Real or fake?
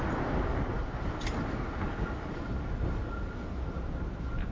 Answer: real